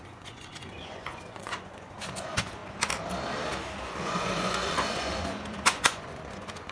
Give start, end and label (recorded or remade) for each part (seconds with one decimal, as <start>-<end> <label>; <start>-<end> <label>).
0.0-2.6 remade; 2.6-3.8 recorded; 3.8-6.7 remade